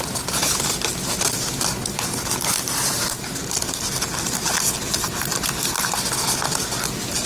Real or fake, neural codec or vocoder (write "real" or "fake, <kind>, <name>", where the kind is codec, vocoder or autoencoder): real